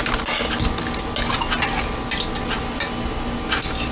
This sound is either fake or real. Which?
real